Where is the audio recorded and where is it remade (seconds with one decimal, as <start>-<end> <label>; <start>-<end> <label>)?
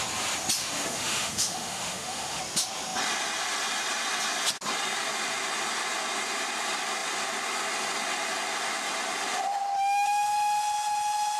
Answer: 0.0-0.6 recorded; 0.6-2.4 remade; 2.4-11.4 recorded